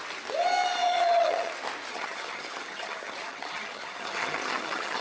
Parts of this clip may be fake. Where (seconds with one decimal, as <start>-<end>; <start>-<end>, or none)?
0.8-1.5; 1.9-5.0